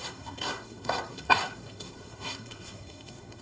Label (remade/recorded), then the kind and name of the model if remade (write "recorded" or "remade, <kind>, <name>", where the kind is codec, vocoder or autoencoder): remade, codec, SNAC